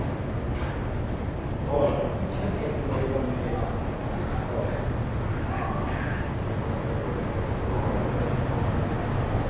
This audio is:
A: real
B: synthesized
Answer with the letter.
A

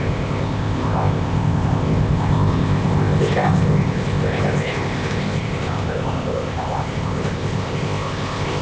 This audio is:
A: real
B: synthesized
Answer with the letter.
B